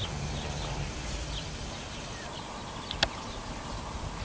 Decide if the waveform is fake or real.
real